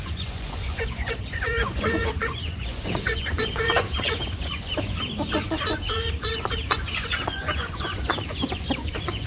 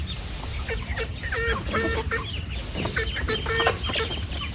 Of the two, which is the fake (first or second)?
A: first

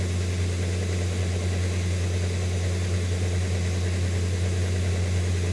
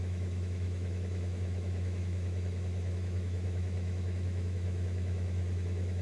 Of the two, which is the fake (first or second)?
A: second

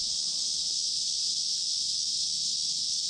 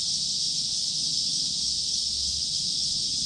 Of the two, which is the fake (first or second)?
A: second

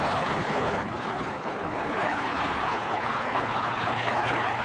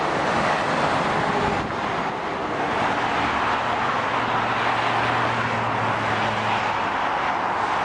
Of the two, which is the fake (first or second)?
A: first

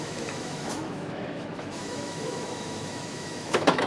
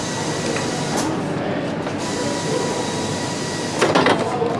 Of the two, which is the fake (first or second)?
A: first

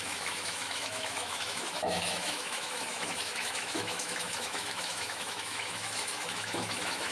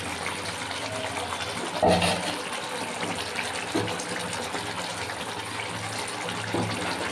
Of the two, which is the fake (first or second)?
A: first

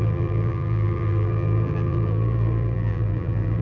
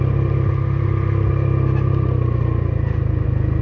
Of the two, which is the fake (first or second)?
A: first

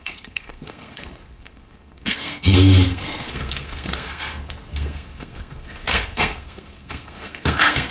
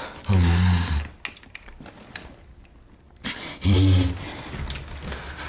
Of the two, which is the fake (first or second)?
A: first